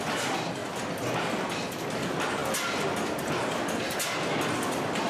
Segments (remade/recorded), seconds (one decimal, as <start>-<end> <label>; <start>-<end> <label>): 0.0-5.1 recorded